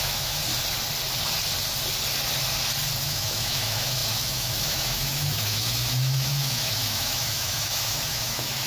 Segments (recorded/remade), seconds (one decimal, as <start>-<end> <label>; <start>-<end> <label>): 0.0-0.4 remade; 0.4-3.0 recorded; 3.0-8.7 remade